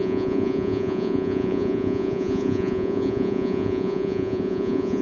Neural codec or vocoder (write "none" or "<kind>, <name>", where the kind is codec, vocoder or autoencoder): vocoder, Vocos